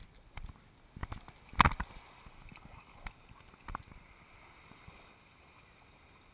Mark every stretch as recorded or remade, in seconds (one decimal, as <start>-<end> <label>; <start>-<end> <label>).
0.0-6.3 recorded